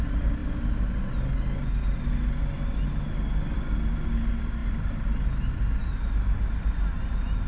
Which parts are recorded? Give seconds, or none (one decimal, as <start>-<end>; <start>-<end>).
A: 0.0-7.5